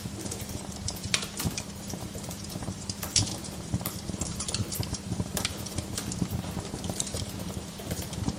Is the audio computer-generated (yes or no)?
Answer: yes